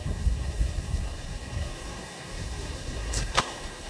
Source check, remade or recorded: remade